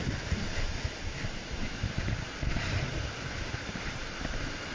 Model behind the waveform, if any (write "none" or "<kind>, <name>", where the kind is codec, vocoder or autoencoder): none